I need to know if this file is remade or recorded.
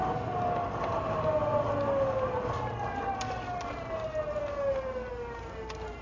recorded